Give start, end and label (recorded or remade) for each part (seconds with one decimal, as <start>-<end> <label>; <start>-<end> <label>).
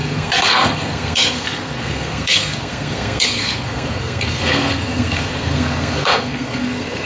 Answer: 0.0-7.1 remade